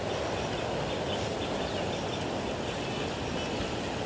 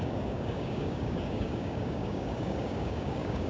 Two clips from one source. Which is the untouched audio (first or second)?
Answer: first